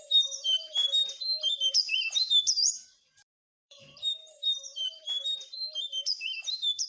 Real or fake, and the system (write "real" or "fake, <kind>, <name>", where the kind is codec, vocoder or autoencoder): fake, vocoder, BigVGAN v2